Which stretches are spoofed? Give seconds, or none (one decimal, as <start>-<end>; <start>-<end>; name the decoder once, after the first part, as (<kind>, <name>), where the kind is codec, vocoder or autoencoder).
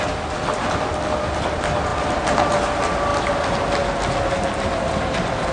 none